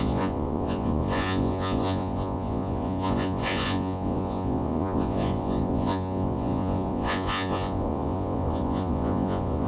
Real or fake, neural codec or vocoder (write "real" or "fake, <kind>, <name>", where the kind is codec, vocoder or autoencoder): fake, vocoder, Vocos